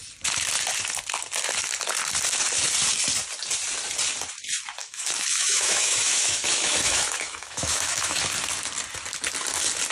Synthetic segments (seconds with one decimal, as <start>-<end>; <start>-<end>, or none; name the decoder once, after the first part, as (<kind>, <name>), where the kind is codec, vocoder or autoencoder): 4.8-8.2 (autoencoder, DAC-VAE)